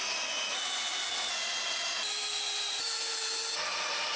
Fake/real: real